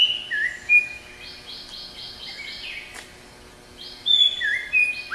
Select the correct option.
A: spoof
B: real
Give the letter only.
B